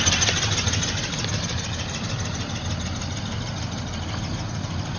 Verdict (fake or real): real